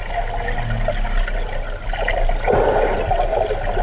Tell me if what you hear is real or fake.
real